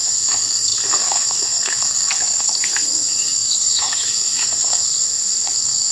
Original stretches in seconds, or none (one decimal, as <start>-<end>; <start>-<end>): none